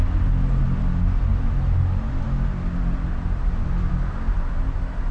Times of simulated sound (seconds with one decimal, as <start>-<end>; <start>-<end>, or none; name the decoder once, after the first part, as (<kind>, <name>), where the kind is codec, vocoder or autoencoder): none